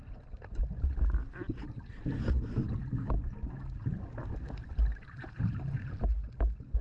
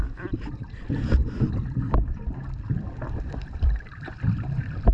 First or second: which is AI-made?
second